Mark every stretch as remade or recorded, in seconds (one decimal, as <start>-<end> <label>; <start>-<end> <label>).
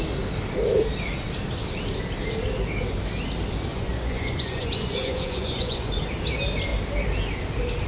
0.0-3.7 recorded; 3.7-6.0 remade; 6.0-7.9 recorded